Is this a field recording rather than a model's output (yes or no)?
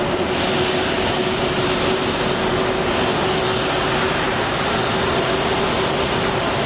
yes